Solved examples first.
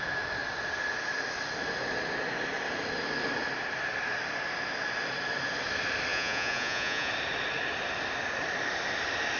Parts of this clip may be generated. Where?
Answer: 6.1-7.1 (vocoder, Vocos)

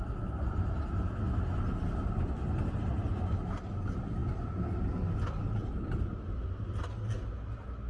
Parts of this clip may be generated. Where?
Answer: none

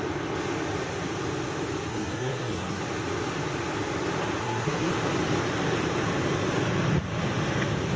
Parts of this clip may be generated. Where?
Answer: 1.9-2.8 (codec, SNAC); 4.4-4.9

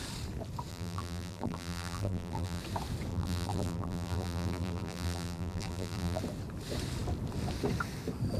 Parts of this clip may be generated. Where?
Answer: 0.7-2.6 (vocoder, BigVGAN v2); 3.1-6.2

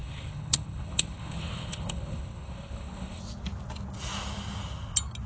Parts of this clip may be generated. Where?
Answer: 0.0-3.2 (codec, HILCodec)

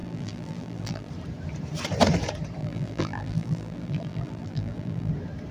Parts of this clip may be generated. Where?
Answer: 0.0-1.1 (vocoder, BigVGAN v2); 2.6-5.1